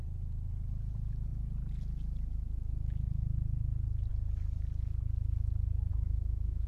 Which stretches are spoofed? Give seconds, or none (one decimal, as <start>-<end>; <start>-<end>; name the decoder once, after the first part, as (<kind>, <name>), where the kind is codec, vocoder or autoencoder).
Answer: 5.9-6.7 (autoencoder, DAC-VAE)

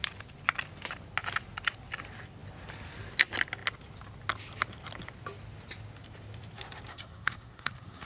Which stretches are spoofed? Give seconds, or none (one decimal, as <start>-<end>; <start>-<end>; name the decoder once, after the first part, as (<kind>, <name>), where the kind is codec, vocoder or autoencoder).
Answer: 6.9-8.1 (codec, SNAC)

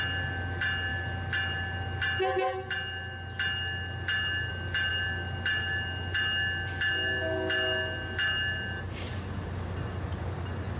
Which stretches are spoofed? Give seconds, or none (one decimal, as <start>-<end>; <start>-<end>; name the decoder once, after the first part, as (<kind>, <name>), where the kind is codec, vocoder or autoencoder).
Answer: none

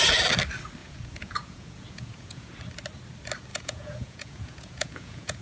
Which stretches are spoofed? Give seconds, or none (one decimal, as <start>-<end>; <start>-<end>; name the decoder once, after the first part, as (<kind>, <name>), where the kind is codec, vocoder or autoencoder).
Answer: 0.8-2.5 (vocoder, Vocos); 3.5-5.4

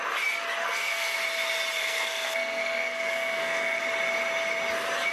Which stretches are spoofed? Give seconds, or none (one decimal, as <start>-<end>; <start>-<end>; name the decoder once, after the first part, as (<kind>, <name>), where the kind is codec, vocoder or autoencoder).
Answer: 0.6-1.2 (codec, SNAC); 1.8-3.8

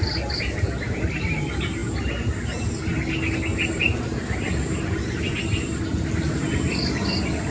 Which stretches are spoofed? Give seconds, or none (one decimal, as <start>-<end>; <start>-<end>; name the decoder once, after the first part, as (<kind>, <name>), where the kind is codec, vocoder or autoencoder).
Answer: none

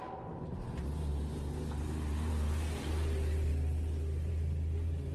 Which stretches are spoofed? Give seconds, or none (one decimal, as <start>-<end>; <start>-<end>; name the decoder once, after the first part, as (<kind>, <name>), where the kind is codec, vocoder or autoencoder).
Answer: none

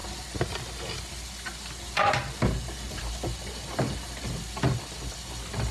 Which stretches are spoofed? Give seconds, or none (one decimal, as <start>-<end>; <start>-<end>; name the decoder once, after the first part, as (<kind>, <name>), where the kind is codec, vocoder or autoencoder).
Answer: none